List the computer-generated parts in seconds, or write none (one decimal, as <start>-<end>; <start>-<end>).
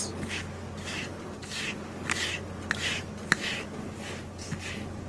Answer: none